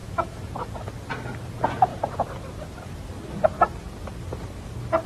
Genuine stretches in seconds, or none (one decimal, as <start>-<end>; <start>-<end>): 0.5-5.1